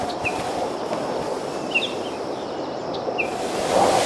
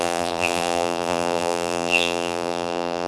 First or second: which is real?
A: first